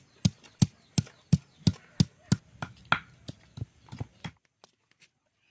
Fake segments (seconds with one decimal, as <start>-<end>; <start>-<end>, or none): none